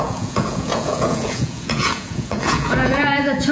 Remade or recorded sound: remade